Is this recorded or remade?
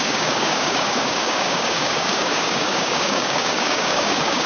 remade